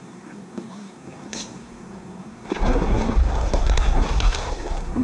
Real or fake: fake